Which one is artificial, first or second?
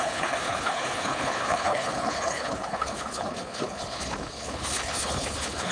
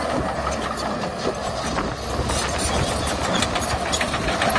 first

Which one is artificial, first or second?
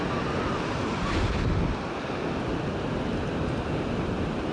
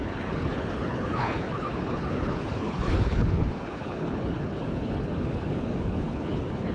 second